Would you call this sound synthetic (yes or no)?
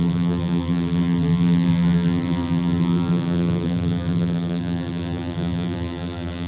yes